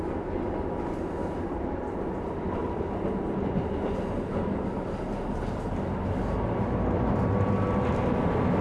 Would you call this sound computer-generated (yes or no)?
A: no